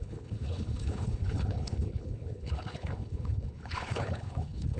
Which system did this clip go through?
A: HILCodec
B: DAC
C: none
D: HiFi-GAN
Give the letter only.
A